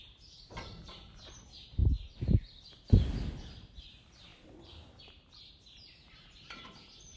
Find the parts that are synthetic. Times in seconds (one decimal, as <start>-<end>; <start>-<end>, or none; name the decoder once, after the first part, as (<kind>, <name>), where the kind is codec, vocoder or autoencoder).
0.0-1.8 (vocoder, BigVGAN v2); 2.7-4.3; 5.0-7.2